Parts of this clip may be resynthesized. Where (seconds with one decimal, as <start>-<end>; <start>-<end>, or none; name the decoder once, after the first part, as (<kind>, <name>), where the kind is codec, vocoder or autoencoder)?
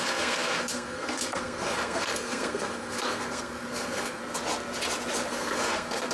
0.0-4.2 (codec, SNAC); 5.3-6.1